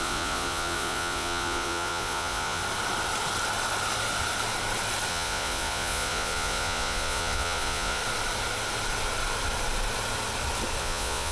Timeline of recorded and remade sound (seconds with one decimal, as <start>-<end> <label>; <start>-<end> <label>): 0.0-2.6 remade; 2.6-5.1 recorded; 5.1-8.0 remade; 8.0-10.8 recorded; 10.8-11.3 remade